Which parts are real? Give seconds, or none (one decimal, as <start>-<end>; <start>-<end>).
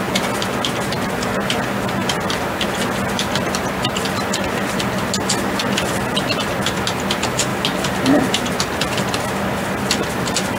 0.0-10.6